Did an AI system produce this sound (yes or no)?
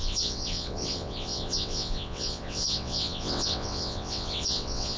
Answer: yes